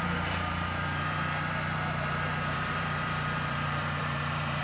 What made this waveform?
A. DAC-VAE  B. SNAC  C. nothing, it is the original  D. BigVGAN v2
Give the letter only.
D